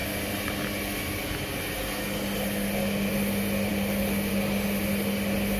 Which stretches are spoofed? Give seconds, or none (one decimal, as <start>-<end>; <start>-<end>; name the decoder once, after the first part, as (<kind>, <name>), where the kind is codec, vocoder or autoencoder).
none